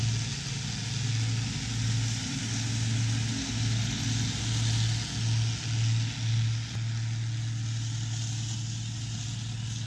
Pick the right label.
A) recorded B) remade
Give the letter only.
A